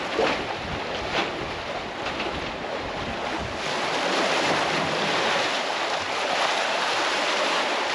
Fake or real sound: real